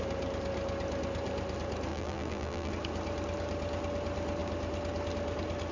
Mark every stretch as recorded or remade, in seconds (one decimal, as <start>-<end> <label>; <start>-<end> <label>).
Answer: 0.0-1.9 recorded; 1.9-2.7 remade; 2.7-5.7 recorded